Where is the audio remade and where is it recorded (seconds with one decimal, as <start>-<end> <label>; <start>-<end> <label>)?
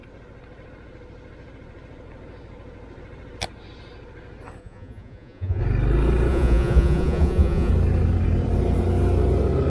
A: 0.0-4.6 recorded; 4.6-5.6 remade; 5.6-6.3 recorded; 6.3-7.7 remade; 7.7-9.7 recorded